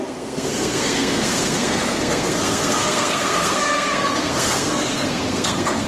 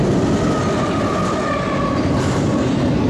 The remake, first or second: first